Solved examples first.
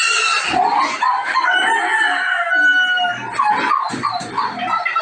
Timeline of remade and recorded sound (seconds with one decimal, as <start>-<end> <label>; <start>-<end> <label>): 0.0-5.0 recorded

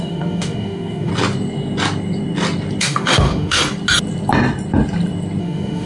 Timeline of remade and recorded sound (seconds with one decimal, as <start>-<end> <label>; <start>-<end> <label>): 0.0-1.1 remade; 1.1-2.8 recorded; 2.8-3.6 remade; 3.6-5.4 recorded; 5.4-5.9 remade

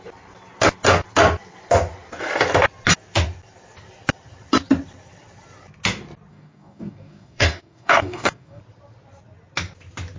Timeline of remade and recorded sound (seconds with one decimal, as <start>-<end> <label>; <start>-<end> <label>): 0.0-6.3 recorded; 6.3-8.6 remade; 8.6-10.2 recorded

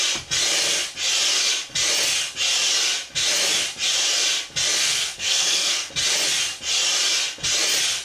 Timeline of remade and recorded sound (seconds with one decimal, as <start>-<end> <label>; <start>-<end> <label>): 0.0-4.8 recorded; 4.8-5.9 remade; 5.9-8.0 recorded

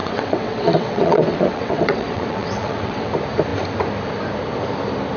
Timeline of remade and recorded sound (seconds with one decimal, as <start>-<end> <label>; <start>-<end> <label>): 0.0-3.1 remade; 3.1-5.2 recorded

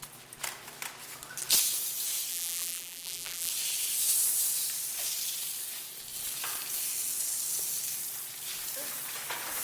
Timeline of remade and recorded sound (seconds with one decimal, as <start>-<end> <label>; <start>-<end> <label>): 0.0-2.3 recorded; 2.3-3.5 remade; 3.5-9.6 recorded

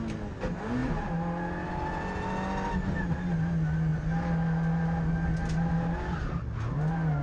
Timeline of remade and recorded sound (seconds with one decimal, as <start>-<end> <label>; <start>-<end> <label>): 0.0-7.2 recorded